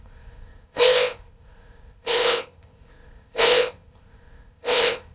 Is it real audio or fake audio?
fake